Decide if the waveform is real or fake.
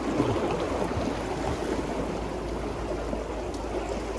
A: real